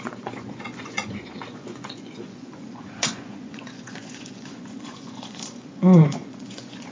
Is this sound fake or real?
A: fake